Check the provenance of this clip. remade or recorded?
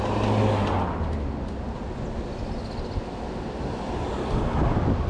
recorded